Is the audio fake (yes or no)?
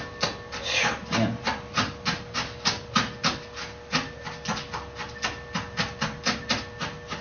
no